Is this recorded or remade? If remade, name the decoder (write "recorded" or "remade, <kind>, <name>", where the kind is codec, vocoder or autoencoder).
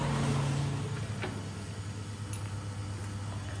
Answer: recorded